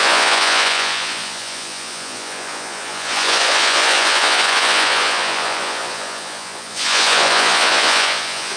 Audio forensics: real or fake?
fake